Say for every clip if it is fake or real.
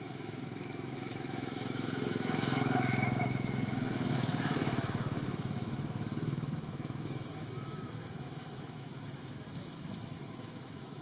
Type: fake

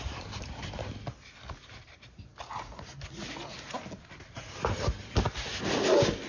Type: real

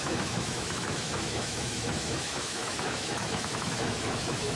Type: fake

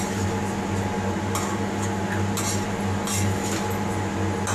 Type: real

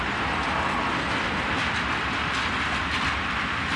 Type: real